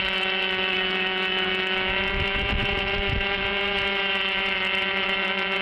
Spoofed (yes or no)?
yes